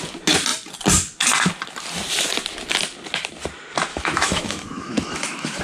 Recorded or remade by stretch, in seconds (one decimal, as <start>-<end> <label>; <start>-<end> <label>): 0.0-3.9 recorded; 3.9-5.6 remade